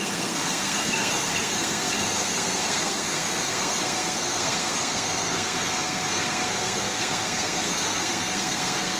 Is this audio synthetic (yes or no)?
yes